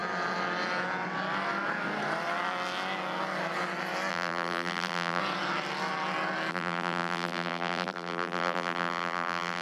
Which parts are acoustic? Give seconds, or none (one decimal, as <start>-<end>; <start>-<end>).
0.0-4.1; 5.2-6.5